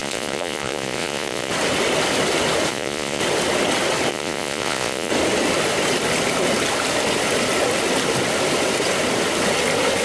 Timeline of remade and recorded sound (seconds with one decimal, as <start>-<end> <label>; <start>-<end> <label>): 0.0-1.5 remade; 1.5-2.7 recorded; 2.7-3.2 remade; 3.2-4.1 recorded; 4.1-5.1 remade; 5.1-10.0 recorded